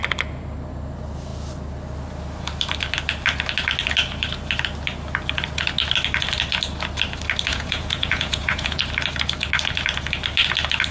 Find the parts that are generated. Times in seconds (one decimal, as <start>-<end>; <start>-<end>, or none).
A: 7.5-8.8